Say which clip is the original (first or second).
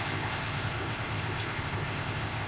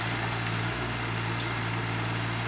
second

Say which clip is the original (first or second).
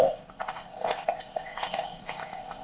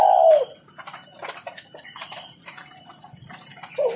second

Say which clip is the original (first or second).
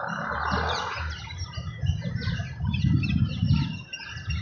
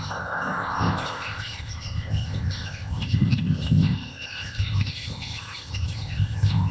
first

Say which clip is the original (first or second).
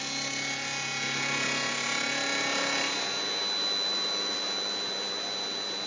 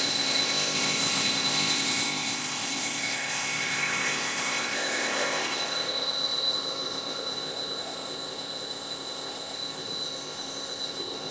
first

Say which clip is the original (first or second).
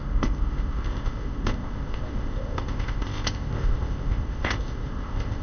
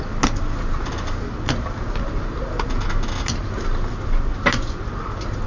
second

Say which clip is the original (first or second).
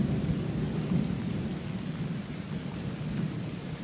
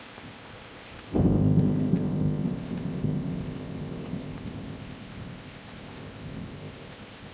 first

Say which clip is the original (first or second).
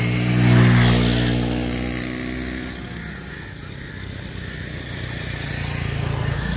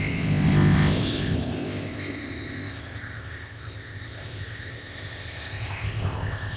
first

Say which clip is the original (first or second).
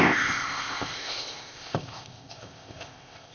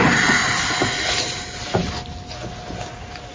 second